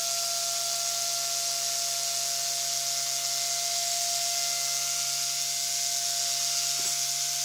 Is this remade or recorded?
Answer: recorded